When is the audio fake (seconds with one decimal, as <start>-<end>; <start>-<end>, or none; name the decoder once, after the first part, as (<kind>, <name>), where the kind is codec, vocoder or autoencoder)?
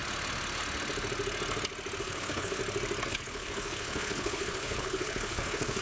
2.0-2.6 (codec, HILCodec); 3.1-5.8